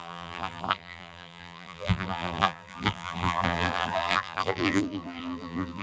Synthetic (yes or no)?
yes